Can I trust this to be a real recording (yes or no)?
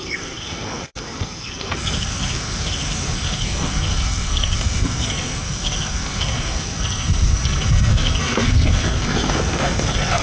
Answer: no